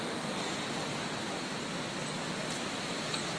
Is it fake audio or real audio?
real